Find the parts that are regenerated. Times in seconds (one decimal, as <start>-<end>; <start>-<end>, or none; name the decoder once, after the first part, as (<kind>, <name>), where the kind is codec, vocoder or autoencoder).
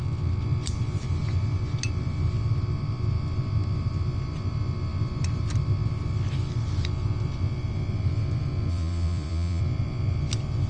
8.7-9.6 (vocoder, Vocos)